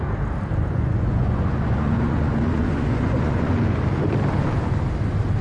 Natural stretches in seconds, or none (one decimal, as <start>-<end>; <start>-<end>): 0.0-0.6; 3.8-5.4